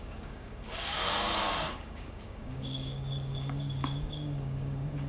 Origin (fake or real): fake